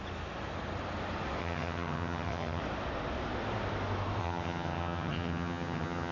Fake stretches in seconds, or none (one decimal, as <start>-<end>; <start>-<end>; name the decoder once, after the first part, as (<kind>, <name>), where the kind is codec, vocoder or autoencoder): 1.4-2.6 (vocoder, HiFi-GAN); 4.2-6.1